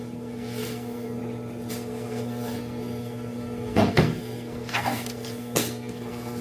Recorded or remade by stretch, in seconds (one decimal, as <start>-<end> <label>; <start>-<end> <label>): 0.0-1.2 remade; 1.2-1.7 recorded; 1.7-6.4 remade